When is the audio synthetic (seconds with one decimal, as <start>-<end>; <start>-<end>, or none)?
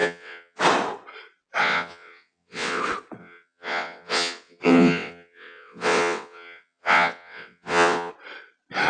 0.0-0.6; 1.6-2.8; 3.2-8.1